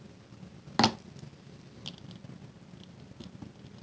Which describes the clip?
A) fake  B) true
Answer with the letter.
B